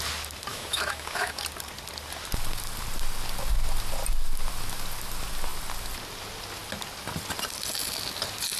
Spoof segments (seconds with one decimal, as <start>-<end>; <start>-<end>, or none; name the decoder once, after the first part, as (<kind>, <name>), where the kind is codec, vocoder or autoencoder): 0.5-1.4 (autoencoder, DAC-VAE)